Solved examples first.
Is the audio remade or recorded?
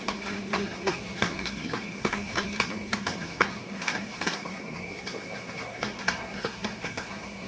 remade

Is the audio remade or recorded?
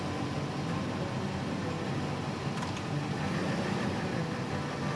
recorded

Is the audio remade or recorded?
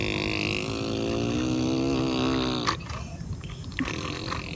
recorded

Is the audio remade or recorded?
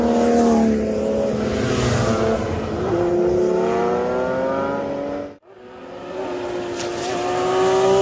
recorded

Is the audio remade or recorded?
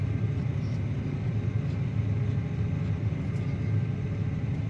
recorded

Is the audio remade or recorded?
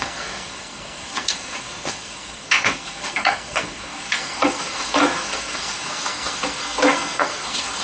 remade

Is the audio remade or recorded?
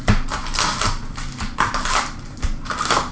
recorded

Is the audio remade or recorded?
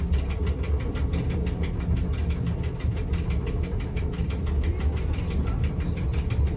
recorded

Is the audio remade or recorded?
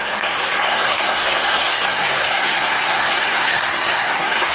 remade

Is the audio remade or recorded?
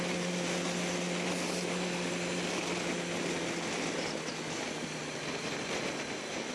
recorded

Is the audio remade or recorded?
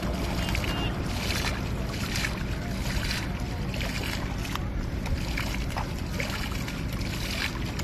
recorded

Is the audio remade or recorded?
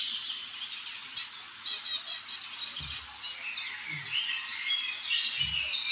recorded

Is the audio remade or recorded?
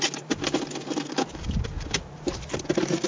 recorded